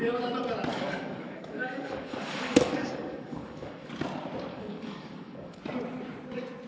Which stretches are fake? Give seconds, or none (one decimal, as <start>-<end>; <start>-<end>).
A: 0.7-3.9; 4.5-5.6